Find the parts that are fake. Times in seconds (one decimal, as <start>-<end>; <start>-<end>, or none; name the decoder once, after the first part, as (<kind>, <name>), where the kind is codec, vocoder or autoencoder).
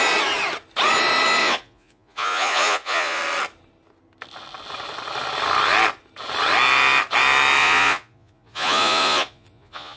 1.4-3.2 (vocoder, Vocos); 7.6-10.0